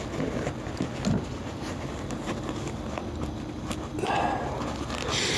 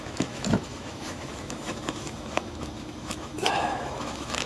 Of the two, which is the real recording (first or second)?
first